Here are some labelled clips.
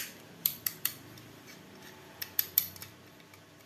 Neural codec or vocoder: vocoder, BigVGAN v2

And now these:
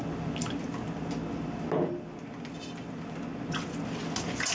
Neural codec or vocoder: none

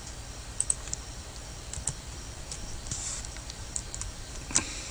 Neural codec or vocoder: vocoder, BigVGAN v2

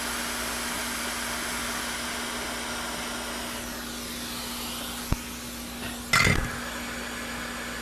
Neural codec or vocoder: none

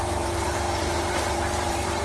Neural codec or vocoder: vocoder, BigVGAN v2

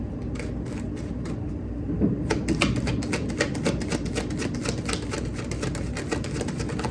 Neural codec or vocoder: none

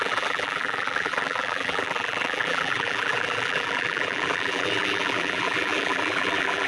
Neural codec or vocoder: vocoder, BigVGAN v2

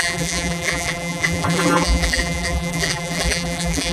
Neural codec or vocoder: vocoder, BigVGAN v2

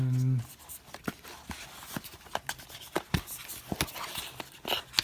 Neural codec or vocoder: none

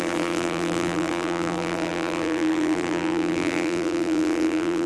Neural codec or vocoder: vocoder, BigVGAN v2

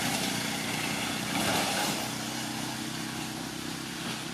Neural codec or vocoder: none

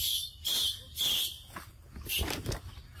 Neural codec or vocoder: none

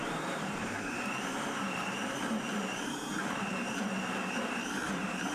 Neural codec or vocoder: vocoder, BigVGAN v2